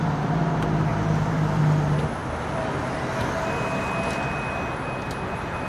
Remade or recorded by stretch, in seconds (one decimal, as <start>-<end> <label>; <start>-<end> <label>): 0.0-0.9 recorded; 0.9-1.6 remade; 1.6-5.7 recorded